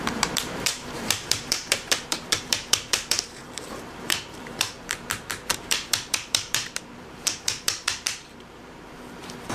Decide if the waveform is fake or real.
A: fake